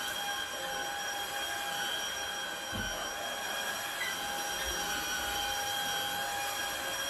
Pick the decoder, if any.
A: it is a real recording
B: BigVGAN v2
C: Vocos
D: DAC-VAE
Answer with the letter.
A